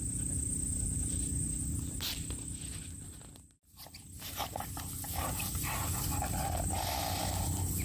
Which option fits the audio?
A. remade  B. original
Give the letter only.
B